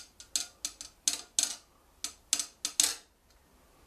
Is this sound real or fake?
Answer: real